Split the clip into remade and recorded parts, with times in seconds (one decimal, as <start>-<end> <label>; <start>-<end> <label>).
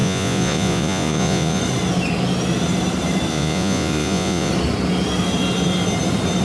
0.0-1.6 remade; 1.6-3.3 recorded; 3.3-4.5 remade; 4.5-6.4 recorded